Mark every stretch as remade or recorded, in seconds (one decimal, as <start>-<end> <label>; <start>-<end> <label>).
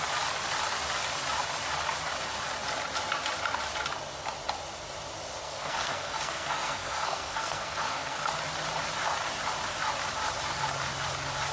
0.0-5.4 recorded; 5.4-8.3 remade; 8.3-11.5 recorded